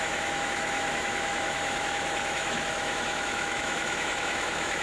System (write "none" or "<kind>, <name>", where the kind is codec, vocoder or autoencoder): autoencoder, DAC-VAE